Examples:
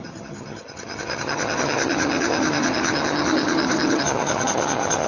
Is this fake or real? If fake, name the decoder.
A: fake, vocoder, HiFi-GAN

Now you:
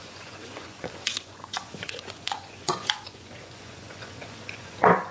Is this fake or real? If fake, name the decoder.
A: fake, vocoder, Vocos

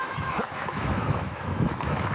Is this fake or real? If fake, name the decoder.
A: fake, autoencoder, DAC-VAE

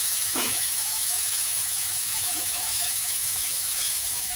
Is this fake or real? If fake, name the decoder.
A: fake, autoencoder, DAC-VAE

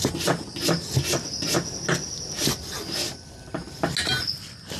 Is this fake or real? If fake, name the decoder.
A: real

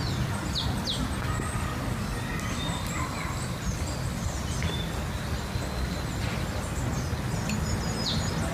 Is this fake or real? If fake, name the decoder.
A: real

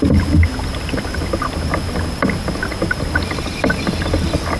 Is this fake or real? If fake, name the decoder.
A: real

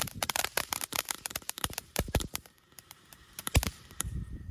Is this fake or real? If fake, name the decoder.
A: fake, vocoder, BigVGAN v2